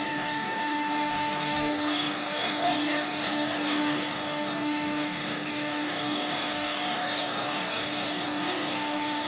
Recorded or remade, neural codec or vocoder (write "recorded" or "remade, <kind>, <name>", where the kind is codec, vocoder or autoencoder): remade, codec, DAC